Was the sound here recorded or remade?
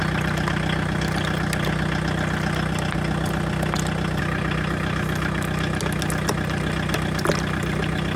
recorded